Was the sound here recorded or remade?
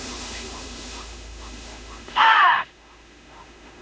remade